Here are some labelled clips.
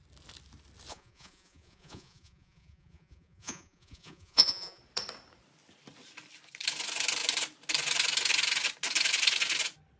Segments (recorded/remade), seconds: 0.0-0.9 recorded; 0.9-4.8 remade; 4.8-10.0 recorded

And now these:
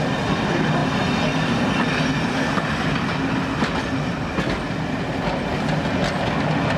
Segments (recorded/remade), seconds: 0.0-6.8 recorded

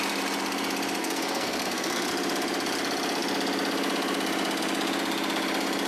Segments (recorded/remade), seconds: 0.0-1.0 recorded; 1.0-2.1 remade; 2.1-5.9 recorded

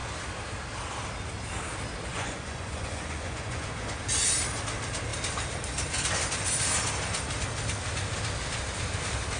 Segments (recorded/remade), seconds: 0.0-2.1 recorded; 2.1-3.9 remade; 3.9-9.4 recorded

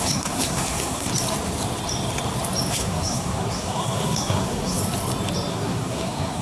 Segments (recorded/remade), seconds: 0.0-1.1 remade; 1.1-2.7 recorded; 2.7-4.8 remade; 4.8-5.5 recorded; 5.5-6.4 remade

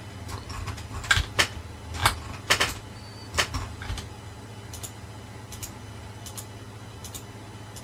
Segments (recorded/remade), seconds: 0.0-7.8 recorded